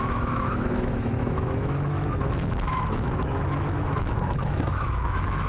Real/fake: fake